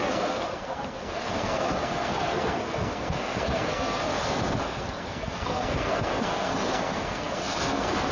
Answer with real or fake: fake